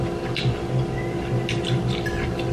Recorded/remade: recorded